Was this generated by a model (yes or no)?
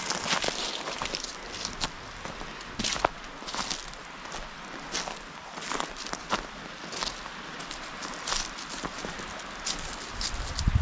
no